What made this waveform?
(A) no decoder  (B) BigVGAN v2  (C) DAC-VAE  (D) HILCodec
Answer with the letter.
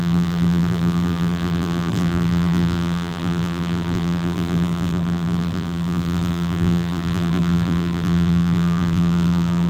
B